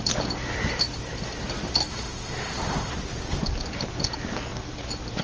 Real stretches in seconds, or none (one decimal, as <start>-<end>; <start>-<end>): 0.0-1.9; 2.9-5.2